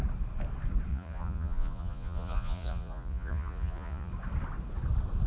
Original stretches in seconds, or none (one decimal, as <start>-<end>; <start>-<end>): 0.0-0.9; 4.1-5.3